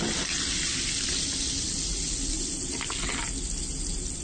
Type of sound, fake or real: real